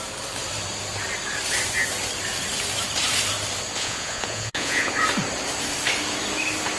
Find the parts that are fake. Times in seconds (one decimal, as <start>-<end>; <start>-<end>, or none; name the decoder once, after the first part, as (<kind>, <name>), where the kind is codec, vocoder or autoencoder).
3.7-4.9 (vocoder, Vocos)